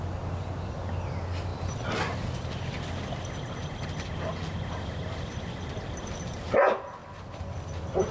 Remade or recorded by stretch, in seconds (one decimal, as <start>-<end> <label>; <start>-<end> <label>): 0.0-8.1 recorded